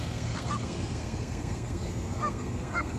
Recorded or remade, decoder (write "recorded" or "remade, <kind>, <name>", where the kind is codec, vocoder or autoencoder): remade, codec, SNAC